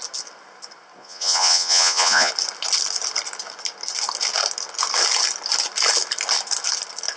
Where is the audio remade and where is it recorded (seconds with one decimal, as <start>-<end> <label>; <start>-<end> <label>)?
0.0-1.0 recorded; 1.0-2.3 remade; 2.3-7.2 recorded